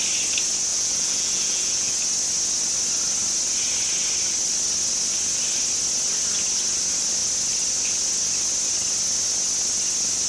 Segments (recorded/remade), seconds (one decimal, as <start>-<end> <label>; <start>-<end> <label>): 0.0-0.7 recorded; 0.7-1.9 remade; 1.9-10.3 recorded